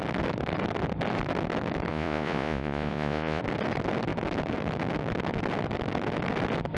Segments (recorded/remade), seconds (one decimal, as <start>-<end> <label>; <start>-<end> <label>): 0.0-1.9 recorded; 1.9-3.4 remade; 3.4-6.8 recorded